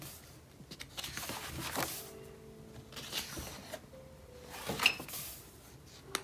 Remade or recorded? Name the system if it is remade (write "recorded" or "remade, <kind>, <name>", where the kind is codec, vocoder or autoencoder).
recorded